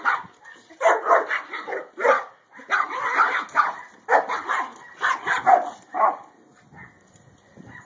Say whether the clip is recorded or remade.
recorded